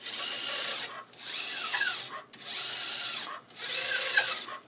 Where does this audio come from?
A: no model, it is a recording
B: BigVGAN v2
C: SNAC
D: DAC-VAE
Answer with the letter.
A